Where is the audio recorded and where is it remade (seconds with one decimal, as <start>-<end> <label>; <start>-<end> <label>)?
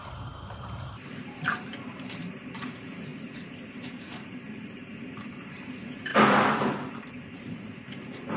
0.0-3.1 remade; 3.1-3.7 recorded; 3.7-8.4 remade